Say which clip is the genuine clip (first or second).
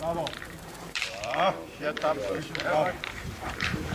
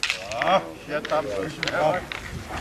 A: second